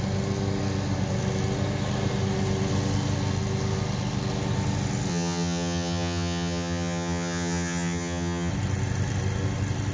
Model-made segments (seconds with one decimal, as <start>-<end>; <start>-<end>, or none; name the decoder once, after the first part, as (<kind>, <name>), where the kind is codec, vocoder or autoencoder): 5.1-8.5 (vocoder, HiFi-GAN)